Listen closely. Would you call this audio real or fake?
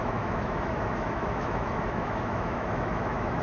fake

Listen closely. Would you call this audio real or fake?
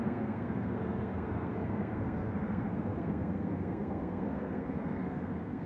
fake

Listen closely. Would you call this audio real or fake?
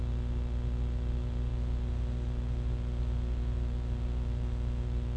real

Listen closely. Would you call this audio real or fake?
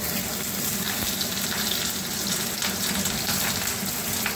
real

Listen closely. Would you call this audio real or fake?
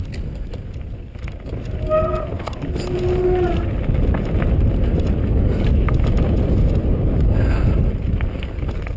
real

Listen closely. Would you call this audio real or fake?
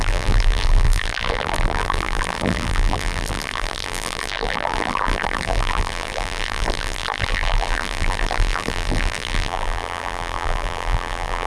fake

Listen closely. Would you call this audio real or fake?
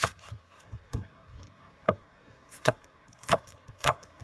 fake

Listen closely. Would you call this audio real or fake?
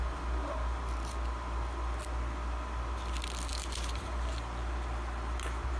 real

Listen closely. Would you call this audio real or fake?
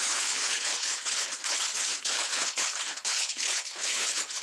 fake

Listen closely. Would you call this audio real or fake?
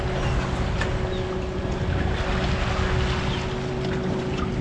real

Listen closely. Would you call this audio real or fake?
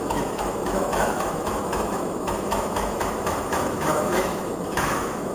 fake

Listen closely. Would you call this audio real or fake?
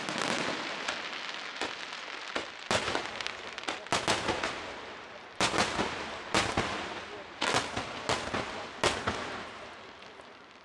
real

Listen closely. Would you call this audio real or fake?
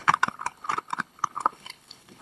fake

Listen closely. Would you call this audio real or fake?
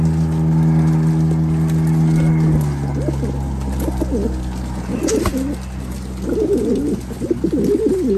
real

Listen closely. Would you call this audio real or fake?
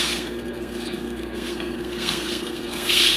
fake